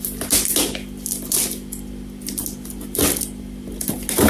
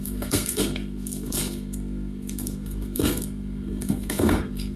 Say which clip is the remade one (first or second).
second